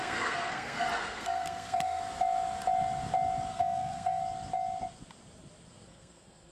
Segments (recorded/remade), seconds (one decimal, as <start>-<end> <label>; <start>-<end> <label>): 0.0-2.0 remade; 2.0-3.5 recorded; 3.5-4.2 remade; 4.2-5.7 recorded; 5.7-6.5 remade